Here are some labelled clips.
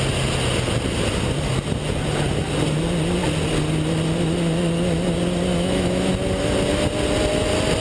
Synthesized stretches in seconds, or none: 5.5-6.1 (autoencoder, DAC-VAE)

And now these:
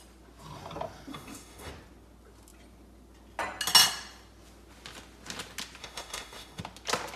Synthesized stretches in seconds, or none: 1.1-1.7 (autoencoder, DAC-VAE); 5.8-6.6

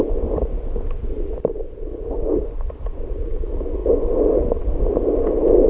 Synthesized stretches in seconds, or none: none

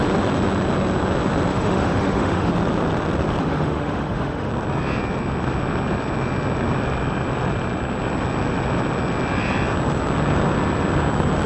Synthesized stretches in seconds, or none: 1.5-2.5 (autoencoder, DAC-VAE); 3.4-4.5

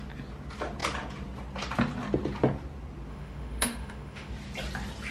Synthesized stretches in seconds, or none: 3.1-4.3 (autoencoder, DAC-VAE)

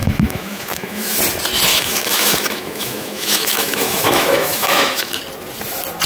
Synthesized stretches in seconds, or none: 0.0-1.2 (autoencoder, DAC-VAE); 1.7-5.2

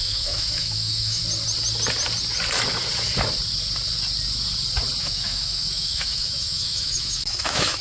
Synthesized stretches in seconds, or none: 0.0-1.2 (autoencoder, DAC-VAE); 5.0-7.8